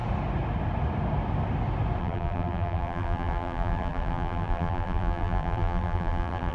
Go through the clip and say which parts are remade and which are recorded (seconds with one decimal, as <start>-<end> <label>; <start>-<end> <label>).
0.0-2.0 recorded; 2.0-6.5 remade